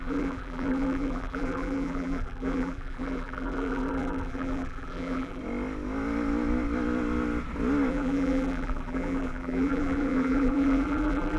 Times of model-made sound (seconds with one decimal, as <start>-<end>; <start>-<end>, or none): 0.0-5.4; 7.9-11.4